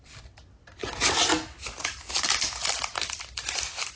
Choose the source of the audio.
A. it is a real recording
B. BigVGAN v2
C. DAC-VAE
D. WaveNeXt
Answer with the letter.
A